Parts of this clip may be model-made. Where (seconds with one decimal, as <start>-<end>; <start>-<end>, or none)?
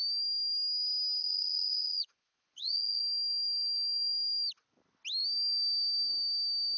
1.2-3.0